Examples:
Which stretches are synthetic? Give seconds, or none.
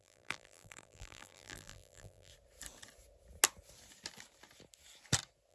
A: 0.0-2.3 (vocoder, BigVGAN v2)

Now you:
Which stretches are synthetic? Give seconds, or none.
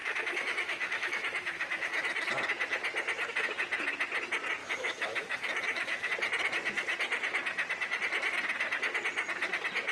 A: 0.0-2.3 (autoencoder, DAC-VAE); 4.6-6.1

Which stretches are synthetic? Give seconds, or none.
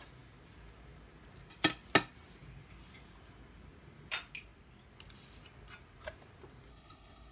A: 6.7-7.3 (codec, HILCodec)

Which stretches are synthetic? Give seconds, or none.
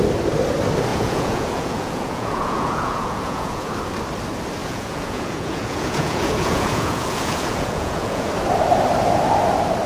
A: 0.9-3.7 (vocoder, Vocos); 4.6-8.3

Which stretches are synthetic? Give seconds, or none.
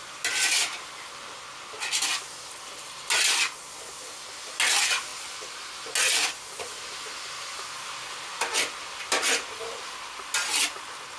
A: none